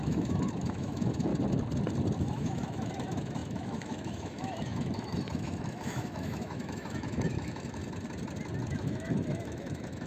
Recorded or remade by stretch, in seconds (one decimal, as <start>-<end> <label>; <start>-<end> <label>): 0.0-1.3 remade; 1.3-2.2 recorded; 2.2-7.8 remade; 7.8-8.7 recorded; 8.7-10.1 remade